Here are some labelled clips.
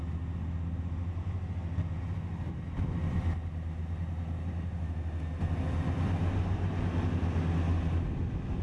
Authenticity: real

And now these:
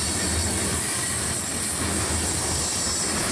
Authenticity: real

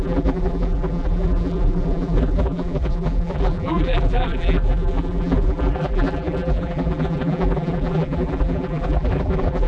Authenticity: fake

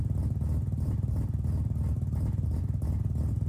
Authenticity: fake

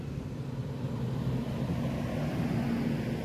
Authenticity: real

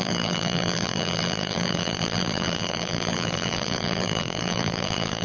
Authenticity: fake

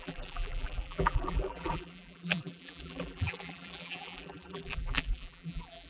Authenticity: fake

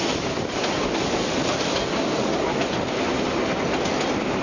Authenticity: real